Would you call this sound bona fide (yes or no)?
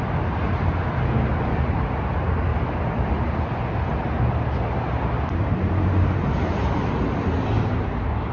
yes